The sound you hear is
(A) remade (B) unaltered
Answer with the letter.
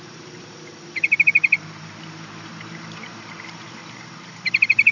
A